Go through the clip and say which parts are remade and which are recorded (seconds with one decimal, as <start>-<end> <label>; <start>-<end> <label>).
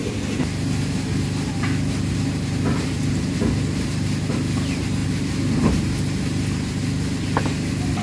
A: 0.0-8.0 recorded